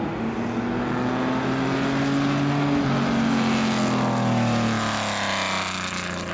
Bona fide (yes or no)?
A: yes